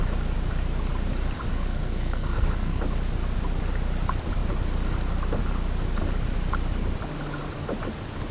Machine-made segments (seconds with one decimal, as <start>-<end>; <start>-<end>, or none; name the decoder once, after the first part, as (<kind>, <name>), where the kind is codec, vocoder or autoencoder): 1.5-2.8 (codec, SNAC)